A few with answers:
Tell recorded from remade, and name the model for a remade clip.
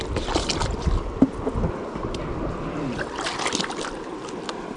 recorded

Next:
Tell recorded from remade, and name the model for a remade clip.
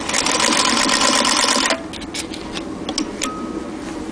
recorded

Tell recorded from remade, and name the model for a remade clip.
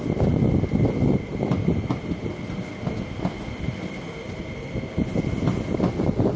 recorded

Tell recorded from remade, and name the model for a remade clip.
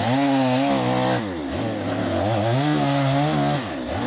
recorded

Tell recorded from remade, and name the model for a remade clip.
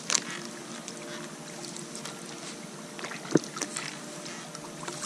recorded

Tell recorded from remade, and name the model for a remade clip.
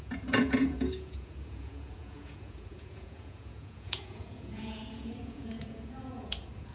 remade, vocoder, Vocos